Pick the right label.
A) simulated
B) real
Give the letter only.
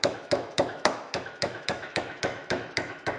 A